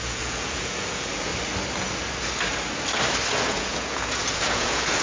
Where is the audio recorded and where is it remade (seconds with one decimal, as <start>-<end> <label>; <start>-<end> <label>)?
0.0-1.3 remade; 1.3-3.3 recorded; 3.3-5.0 remade